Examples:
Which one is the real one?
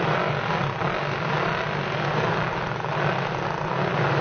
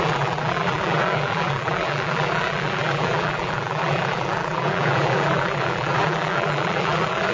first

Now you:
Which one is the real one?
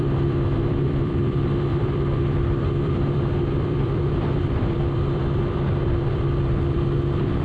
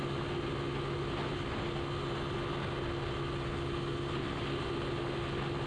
second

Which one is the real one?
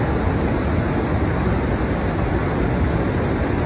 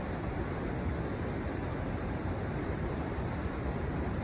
first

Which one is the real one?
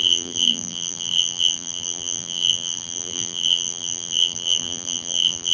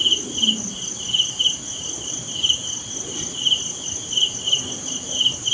second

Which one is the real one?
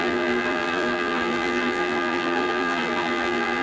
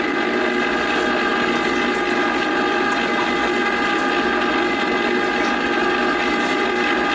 second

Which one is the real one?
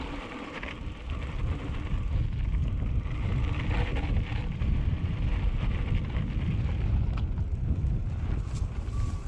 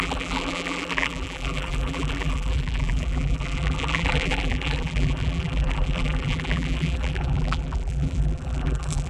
first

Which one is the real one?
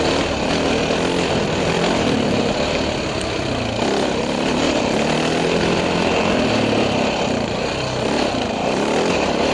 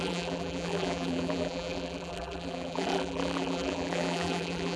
first